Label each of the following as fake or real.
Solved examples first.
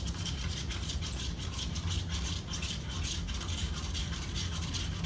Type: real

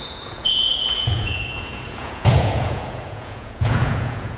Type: fake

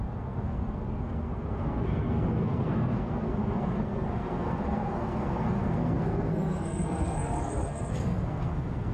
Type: fake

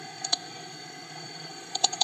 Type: fake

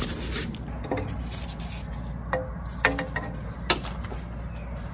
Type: real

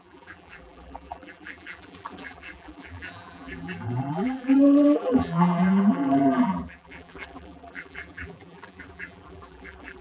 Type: fake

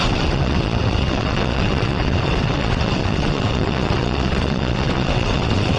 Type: fake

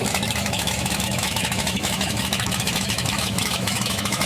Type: fake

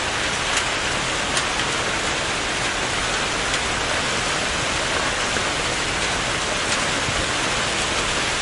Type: real